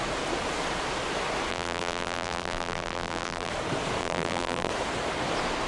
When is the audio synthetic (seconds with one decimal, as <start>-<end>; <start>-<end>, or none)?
1.5-3.5; 4.0-4.7